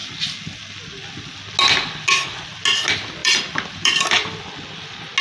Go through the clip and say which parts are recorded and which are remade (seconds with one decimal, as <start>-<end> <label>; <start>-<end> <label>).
0.0-3.2 recorded; 3.2-4.0 remade; 4.0-5.2 recorded